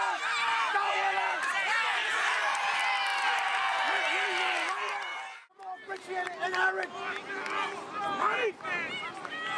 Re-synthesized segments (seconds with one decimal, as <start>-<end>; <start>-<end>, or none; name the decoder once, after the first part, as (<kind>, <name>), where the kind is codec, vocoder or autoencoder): none